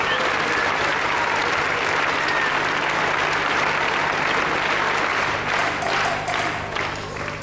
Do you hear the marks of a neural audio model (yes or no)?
no